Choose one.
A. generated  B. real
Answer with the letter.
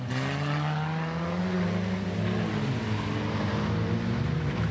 B